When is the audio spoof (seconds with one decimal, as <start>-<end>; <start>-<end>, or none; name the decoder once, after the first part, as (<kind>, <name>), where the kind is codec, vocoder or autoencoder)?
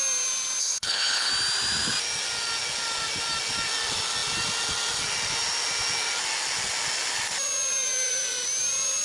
0.6-1.3 (codec, HILCodec)